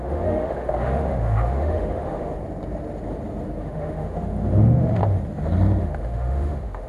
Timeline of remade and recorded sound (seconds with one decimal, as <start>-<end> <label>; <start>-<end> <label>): 0.0-2.3 remade; 2.3-3.6 recorded; 3.6-5.0 remade; 5.0-5.8 recorded; 5.8-6.9 remade